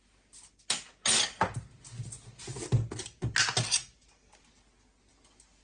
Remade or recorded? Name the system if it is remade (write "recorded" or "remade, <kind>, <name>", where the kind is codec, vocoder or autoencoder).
recorded